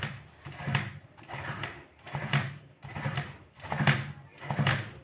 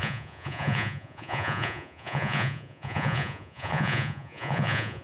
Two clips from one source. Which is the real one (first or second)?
first